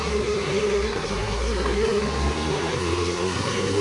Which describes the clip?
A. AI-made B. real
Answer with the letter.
A